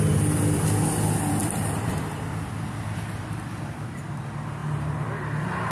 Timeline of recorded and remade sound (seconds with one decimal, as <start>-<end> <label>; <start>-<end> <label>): 0.0-1.4 recorded; 1.4-4.0 remade; 4.0-5.7 recorded